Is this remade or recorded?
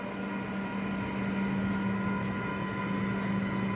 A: recorded